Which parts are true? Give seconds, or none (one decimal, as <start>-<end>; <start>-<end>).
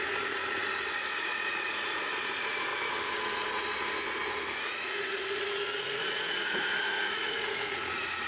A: 2.7-4.6